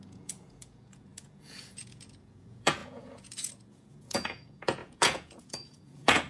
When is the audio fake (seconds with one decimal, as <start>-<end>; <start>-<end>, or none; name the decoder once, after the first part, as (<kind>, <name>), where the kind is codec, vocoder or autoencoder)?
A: 0.0-6.3 (vocoder, Vocos)